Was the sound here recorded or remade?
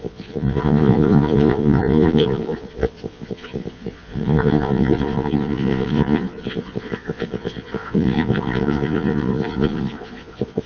remade